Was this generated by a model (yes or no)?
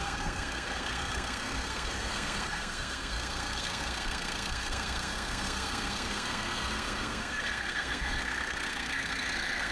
yes